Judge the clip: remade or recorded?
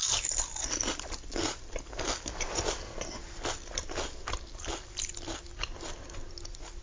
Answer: recorded